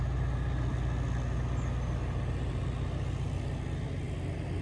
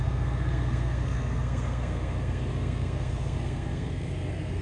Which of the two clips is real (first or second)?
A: first